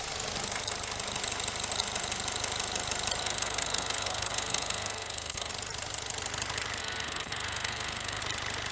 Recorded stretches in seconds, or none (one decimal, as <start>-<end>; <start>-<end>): 0.0-3.2; 5.5-6.8; 8.2-8.7